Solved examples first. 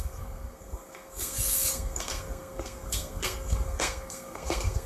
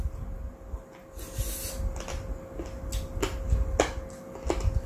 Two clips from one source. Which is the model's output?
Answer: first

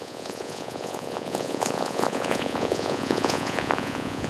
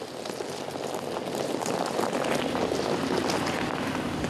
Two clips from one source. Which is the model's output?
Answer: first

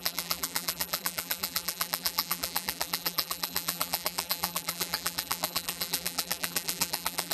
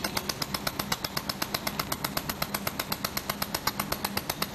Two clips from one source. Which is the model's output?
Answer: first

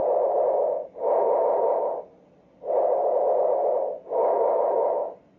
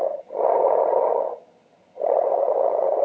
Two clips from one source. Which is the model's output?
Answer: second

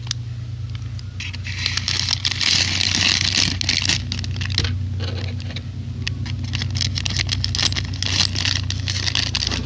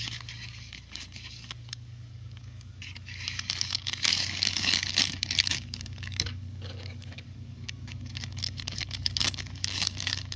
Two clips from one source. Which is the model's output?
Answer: second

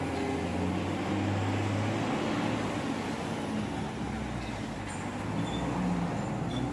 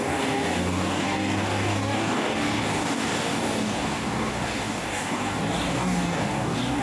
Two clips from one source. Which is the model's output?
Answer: second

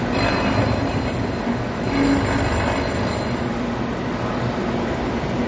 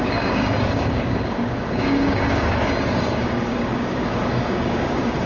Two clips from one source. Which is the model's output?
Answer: second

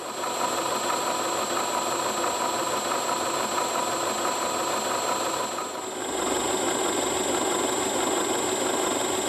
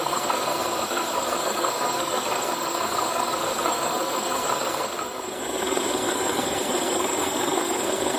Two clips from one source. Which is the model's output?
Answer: second